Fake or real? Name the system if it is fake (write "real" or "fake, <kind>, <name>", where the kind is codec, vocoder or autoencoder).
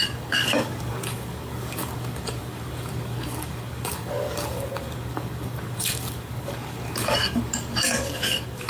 fake, codec, DAC